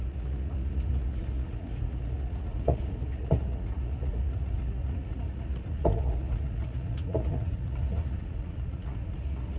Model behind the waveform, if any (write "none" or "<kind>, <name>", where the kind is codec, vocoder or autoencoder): vocoder, Vocos